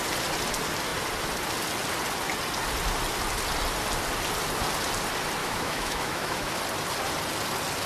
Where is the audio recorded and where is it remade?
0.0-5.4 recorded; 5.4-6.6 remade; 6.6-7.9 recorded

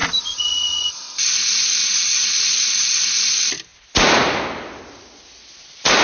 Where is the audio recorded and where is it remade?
0.0-0.9 remade; 0.9-1.8 recorded; 1.8-2.9 remade; 2.9-6.0 recorded